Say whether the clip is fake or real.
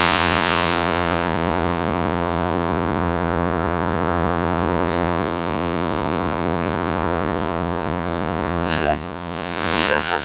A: fake